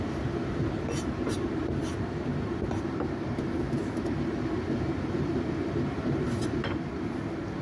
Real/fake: fake